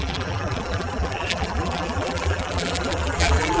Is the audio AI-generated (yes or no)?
yes